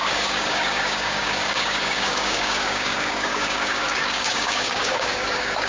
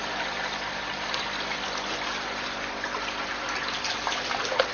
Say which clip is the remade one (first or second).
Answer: first